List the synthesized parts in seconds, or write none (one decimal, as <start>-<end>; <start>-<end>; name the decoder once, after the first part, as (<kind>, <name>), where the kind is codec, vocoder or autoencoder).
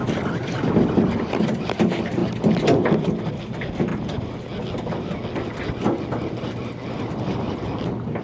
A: 0.0-2.2 (vocoder, BigVGAN v2); 3.3-3.9; 6.9-8.2